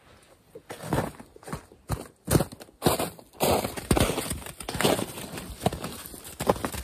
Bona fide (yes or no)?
yes